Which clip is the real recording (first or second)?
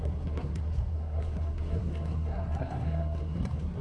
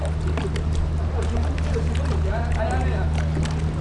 second